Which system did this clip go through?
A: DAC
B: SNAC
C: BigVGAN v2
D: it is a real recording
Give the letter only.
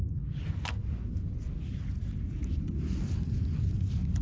D